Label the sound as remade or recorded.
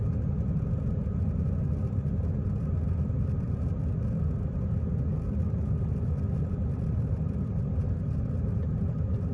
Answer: recorded